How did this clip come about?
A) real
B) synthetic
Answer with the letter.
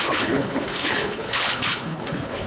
B